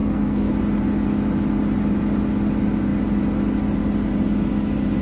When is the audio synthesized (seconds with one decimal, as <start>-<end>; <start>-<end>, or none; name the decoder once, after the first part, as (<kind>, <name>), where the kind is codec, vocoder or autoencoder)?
0.0-0.5 (codec, SNAC)